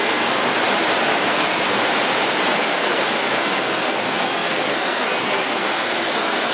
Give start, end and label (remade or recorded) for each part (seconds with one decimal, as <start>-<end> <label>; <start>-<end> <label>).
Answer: 0.0-0.4 remade; 0.4-1.2 recorded; 1.2-1.8 remade; 1.8-2.5 recorded; 2.5-6.5 remade